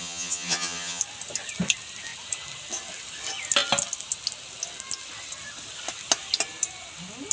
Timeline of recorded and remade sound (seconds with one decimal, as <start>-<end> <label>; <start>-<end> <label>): 0.0-1.0 remade; 1.0-7.3 recorded